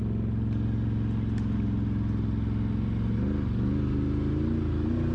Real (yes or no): yes